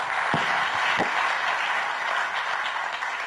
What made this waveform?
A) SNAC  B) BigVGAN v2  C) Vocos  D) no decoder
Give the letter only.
D